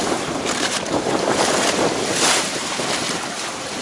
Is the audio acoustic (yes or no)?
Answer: no